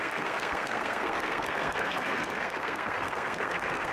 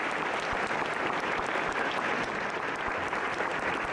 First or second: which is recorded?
second